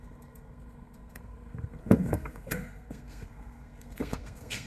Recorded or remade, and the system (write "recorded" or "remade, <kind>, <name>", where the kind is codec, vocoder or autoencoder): remade, codec, SNAC